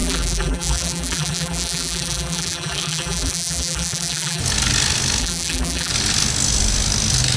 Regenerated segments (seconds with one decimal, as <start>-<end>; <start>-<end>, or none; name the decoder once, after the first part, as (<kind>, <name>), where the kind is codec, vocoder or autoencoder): 0.0-4.4 (vocoder, BigVGAN v2); 5.2-5.9